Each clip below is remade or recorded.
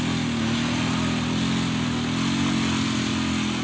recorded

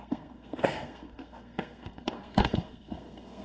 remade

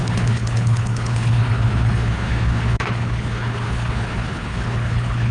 remade